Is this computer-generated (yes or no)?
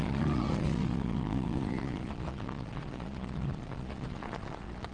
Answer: yes